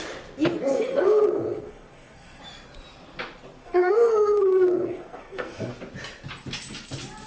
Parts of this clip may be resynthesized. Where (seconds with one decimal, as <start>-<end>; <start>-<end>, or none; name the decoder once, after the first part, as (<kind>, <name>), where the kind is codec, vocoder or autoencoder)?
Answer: 0.7-2.4 (codec, SNAC); 3.6-5.7